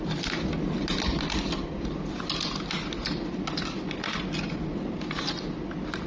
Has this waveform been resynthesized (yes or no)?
no